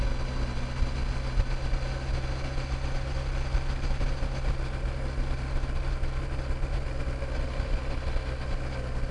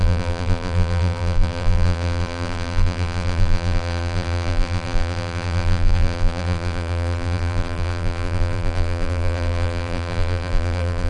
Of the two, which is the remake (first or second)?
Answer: second